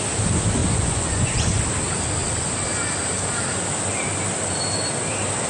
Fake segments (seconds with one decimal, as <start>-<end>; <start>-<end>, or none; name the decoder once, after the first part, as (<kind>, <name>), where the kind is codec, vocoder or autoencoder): 0.6-1.6 (vocoder, Vocos)